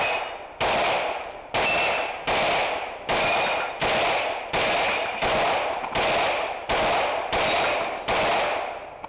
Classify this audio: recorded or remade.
recorded